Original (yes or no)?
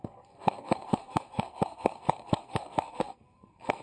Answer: no